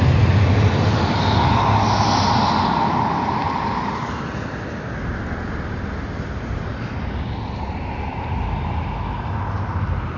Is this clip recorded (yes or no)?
yes